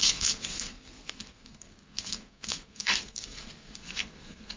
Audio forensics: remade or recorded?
remade